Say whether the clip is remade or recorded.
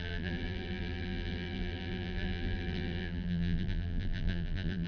remade